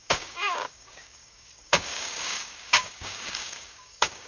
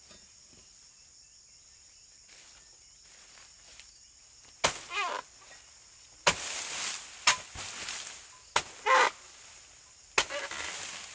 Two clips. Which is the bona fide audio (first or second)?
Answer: second